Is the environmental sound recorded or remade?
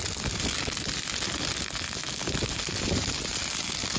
recorded